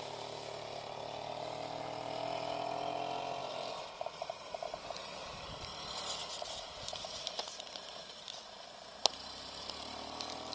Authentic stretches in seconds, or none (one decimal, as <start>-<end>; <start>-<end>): 0.0-3.4; 4.5-6.2; 8.2-10.5